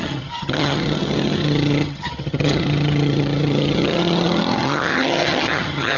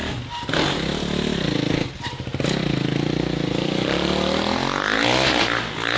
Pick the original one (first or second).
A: second